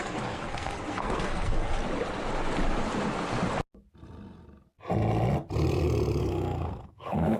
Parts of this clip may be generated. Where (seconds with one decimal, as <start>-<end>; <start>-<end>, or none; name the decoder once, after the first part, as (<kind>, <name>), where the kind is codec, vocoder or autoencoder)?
0.0-1.8 (codec, SNAC); 6.2-7.4